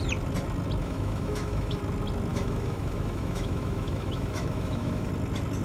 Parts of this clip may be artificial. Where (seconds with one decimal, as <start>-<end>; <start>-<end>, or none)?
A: 0.8-1.8; 2.3-5.1